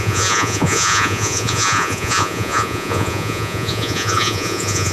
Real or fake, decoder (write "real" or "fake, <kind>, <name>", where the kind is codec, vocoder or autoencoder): fake, vocoder, Vocos